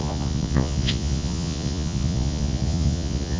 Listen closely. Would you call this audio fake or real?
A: fake